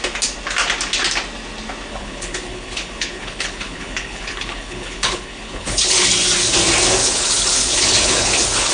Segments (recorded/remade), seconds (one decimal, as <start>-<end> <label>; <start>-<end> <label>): 0.0-1.9 recorded; 1.9-6.1 remade; 6.1-7.0 recorded; 7.0-8.7 remade